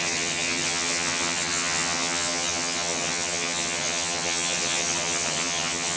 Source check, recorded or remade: remade